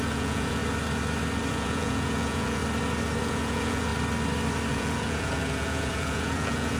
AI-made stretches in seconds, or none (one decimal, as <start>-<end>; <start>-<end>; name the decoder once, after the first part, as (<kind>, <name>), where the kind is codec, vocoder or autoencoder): 0.0-0.6 (vocoder, Vocos); 1.5-2.6; 3.2-3.9; 4.7-6.8